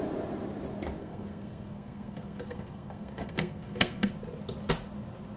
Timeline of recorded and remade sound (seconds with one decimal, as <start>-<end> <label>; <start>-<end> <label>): 0.0-1.0 recorded; 1.0-4.1 remade; 4.1-5.4 recorded